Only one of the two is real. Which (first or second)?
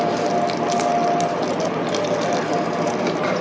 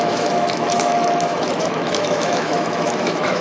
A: first